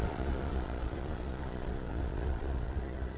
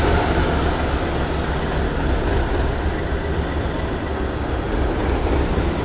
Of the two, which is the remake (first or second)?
first